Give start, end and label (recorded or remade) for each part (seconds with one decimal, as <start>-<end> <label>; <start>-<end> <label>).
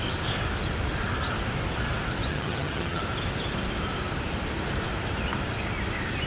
0.0-2.3 recorded; 2.3-3.0 remade; 3.0-6.3 recorded